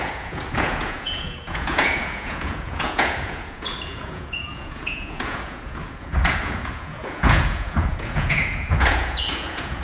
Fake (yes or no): yes